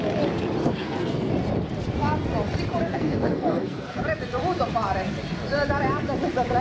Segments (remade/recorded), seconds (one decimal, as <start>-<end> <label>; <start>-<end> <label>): 0.0-0.6 recorded; 0.6-1.3 remade; 1.3-2.9 recorded; 2.9-4.0 remade; 4.0-6.6 recorded